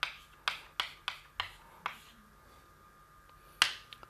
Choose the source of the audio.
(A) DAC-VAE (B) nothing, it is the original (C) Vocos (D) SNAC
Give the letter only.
B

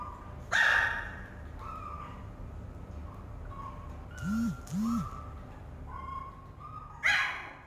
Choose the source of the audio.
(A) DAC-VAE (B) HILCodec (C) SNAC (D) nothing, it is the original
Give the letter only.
D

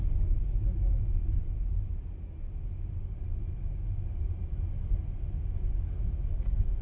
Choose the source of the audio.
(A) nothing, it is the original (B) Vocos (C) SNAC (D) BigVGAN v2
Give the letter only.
A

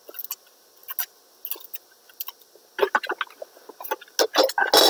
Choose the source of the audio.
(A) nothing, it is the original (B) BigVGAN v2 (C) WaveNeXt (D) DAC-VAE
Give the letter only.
A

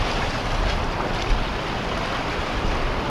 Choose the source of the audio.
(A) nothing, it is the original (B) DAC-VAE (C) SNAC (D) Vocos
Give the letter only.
A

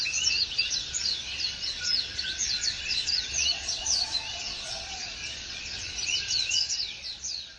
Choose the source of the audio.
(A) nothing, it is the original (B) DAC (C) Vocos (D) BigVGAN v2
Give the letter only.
C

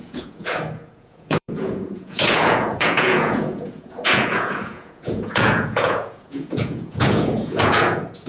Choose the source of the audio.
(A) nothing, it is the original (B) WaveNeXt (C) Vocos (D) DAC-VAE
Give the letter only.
C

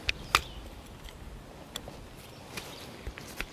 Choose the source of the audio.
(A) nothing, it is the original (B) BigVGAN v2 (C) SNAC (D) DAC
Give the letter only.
A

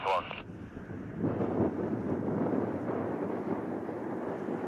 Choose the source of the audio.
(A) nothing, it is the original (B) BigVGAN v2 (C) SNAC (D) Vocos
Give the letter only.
A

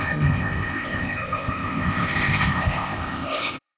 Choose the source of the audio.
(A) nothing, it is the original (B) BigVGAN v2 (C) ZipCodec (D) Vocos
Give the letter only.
C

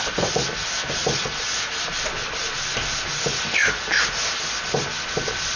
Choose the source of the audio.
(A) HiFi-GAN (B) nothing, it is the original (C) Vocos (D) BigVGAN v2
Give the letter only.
B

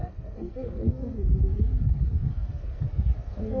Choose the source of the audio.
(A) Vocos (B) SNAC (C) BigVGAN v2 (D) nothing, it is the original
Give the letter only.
B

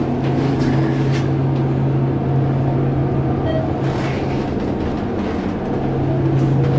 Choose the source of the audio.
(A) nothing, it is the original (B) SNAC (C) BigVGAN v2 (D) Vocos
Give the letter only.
A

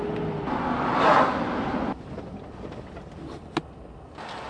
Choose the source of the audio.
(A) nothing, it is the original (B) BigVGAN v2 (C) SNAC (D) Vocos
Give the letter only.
A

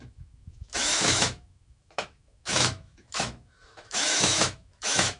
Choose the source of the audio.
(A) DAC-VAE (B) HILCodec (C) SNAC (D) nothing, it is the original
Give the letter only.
A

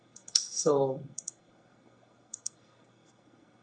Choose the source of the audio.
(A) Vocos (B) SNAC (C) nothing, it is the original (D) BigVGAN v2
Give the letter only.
B